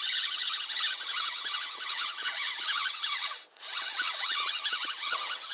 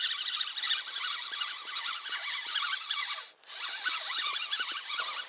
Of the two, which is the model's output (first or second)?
first